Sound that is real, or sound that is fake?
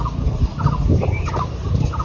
real